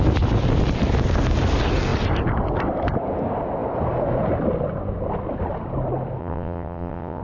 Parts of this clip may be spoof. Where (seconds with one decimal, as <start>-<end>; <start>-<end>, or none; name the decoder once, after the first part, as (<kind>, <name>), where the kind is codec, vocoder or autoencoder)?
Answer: 6.2-7.2 (vocoder, WaveNeXt)